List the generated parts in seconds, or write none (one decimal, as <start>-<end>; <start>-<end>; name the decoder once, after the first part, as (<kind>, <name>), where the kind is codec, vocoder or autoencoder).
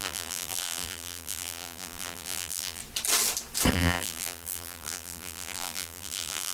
0.0-2.8 (vocoder, BigVGAN v2); 3.7-6.5